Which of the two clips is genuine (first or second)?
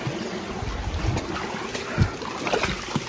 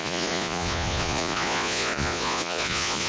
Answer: first